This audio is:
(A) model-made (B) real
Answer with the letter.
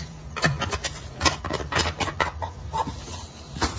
A